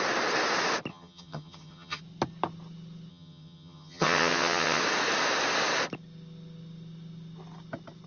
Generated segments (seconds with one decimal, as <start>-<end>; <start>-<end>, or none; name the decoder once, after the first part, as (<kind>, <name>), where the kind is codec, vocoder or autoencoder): 0.9-2.0 (vocoder, HiFi-GAN); 3.1-4.8